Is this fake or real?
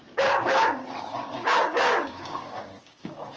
fake